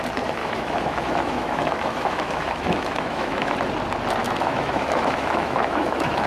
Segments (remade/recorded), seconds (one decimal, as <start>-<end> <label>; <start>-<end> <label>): 0.0-0.4 recorded; 0.4-3.5 remade; 3.5-4.2 recorded; 4.2-6.3 remade